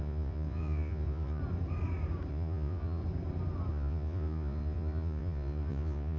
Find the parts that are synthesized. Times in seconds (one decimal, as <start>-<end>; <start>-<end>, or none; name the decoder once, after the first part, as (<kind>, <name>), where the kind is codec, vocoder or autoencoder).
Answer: 0.0-1.4 (vocoder, Vocos); 2.3-3.0; 3.7-6.2